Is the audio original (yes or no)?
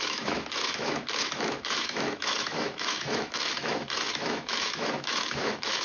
no